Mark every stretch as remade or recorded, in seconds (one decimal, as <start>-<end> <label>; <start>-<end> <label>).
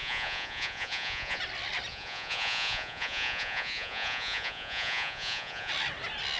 0.0-1.4 remade; 1.4-1.9 recorded; 1.9-5.7 remade; 5.7-6.4 recorded